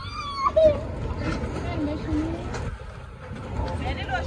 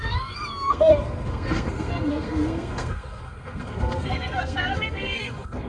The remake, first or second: second